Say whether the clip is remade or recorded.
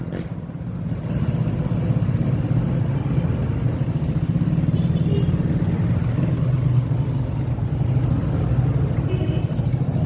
recorded